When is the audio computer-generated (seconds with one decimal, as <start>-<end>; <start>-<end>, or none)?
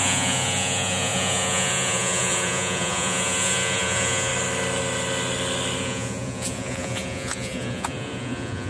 0.0-4.3; 5.8-8.7